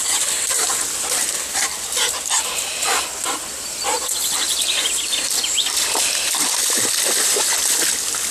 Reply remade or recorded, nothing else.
recorded